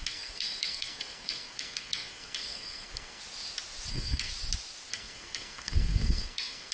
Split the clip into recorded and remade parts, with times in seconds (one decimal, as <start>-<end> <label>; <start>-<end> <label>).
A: 0.0-3.2 remade; 3.2-3.9 recorded; 3.9-4.3 remade; 4.3-4.9 recorded; 4.9-6.7 remade